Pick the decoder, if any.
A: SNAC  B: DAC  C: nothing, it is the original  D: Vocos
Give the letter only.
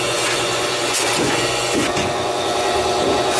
D